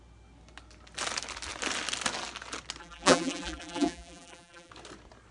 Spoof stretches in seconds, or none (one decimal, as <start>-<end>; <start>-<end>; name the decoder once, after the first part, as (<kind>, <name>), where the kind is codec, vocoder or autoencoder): 2.8-4.7 (vocoder, BigVGAN v2)